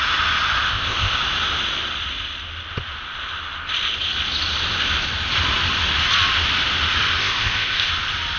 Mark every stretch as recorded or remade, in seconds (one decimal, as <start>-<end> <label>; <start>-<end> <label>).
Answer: 0.0-0.7 recorded; 0.7-1.2 remade; 1.2-7.2 recorded; 7.2-7.9 remade; 7.9-8.4 recorded